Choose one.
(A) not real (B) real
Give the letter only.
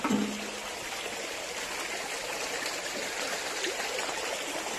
B